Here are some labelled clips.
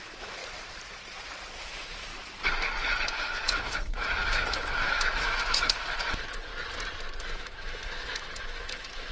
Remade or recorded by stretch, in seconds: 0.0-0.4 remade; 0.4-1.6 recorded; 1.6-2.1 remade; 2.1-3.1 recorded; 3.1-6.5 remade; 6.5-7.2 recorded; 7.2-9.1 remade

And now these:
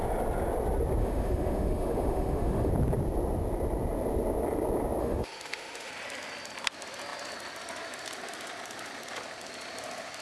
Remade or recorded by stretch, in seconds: 0.0-1.0 recorded; 1.0-2.7 remade; 2.7-5.0 recorded; 5.0-5.9 remade; 5.9-10.2 recorded

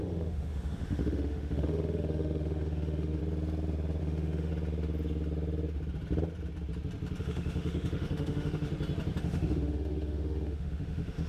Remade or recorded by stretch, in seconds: 0.0-3.2 remade; 3.2-4.0 recorded; 4.0-4.5 remade; 4.5-7.2 recorded; 7.2-8.7 remade; 8.7-9.2 recorded; 9.2-11.3 remade

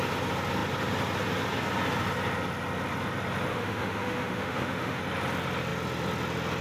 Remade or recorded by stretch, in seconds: 0.0-3.5 recorded; 3.5-5.0 remade; 5.0-6.6 recorded

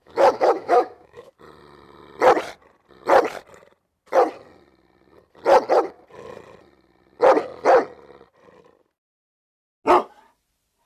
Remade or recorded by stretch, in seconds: 0.0-1.3 remade; 1.3-10.9 recorded

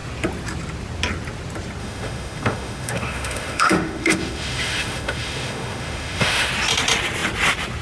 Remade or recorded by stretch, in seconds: 0.0-1.8 recorded; 1.8-6.5 remade; 6.5-7.8 recorded

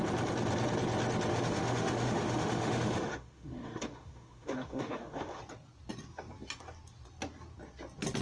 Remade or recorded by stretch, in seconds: 0.0-1.3 recorded; 1.3-5.4 remade; 5.4-8.2 recorded